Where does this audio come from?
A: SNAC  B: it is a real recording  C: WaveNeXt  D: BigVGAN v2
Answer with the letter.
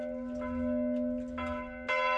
B